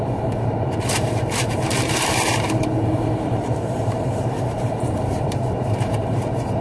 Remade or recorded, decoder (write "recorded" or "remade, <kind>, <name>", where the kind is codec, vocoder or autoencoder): remade, vocoder, BigVGAN v2